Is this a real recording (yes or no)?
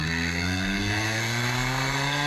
no